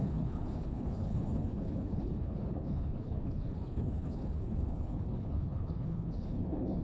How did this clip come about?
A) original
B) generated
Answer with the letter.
B